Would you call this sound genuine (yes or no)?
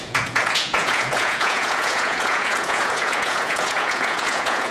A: no